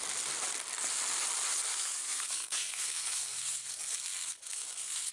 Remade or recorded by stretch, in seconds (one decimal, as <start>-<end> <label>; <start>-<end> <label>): 0.0-1.7 recorded; 1.7-5.1 remade